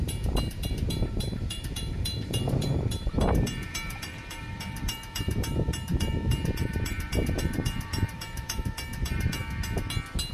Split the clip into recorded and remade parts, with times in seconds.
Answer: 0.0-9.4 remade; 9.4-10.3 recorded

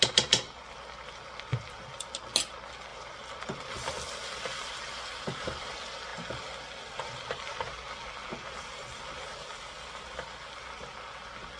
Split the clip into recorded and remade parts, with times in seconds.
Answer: 0.0-1.5 recorded; 1.5-2.1 remade; 2.1-2.9 recorded; 2.9-3.9 remade; 3.9-11.6 recorded

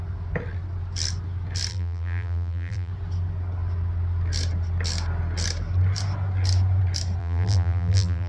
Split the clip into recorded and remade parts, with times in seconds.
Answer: 0.0-1.7 recorded; 1.7-2.9 remade; 2.9-7.2 recorded; 7.2-8.3 remade

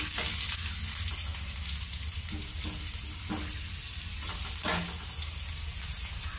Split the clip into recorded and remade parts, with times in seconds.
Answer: 0.0-6.4 recorded

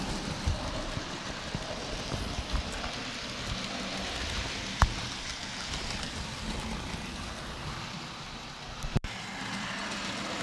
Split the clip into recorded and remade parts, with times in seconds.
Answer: 0.0-3.0 remade; 3.0-4.4 recorded; 4.4-10.4 remade

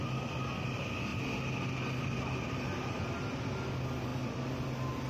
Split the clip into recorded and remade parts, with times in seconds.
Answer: 0.0-5.1 recorded

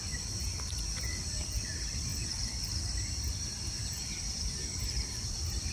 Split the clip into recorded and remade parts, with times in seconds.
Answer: 0.0-5.7 remade